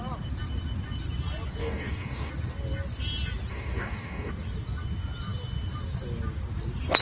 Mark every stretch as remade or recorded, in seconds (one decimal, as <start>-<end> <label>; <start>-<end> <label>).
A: 0.0-1.6 recorded; 1.6-2.3 remade; 2.3-3.5 recorded; 3.5-4.3 remade; 4.3-7.0 recorded